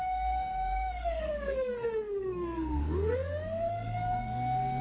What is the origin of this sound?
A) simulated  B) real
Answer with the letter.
A